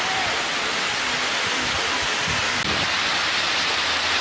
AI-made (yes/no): no